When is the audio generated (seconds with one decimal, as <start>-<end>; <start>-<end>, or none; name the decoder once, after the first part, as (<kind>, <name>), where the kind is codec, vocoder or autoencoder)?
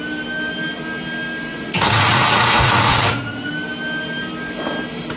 1.5-3.5 (vocoder, Vocos)